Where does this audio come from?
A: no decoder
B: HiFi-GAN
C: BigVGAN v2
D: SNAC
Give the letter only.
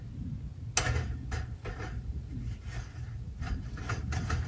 A